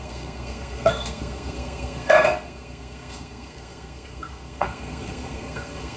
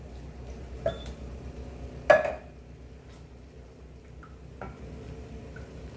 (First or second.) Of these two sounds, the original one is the second